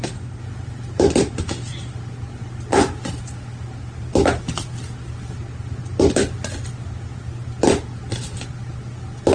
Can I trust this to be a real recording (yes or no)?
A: yes